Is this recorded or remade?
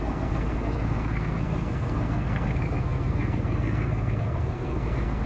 remade